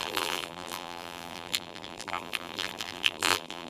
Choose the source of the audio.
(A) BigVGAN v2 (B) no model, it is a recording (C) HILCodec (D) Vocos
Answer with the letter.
A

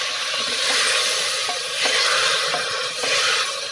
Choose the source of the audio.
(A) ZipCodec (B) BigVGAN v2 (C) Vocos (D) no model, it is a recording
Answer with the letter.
D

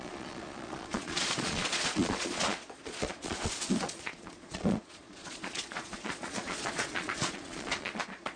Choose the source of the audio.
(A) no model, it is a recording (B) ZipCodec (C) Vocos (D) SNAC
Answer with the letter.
C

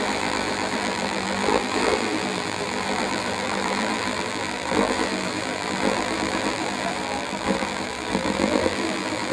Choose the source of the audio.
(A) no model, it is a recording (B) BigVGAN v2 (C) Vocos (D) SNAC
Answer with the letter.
B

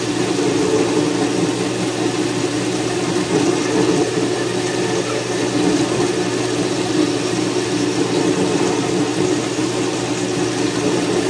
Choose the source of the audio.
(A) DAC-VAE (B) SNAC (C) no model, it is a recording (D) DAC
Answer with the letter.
C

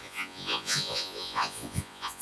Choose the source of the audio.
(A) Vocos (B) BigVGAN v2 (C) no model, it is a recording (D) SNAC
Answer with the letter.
A